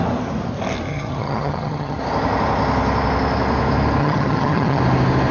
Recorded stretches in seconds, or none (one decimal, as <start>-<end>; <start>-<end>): 0.0-0.9; 2.0-4.0; 4.8-5.3